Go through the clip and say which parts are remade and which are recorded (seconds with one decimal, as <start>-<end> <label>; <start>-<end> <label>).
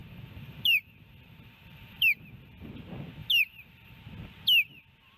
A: 0.0-2.7 remade; 2.7-3.2 recorded; 3.2-4.0 remade; 4.0-5.2 recorded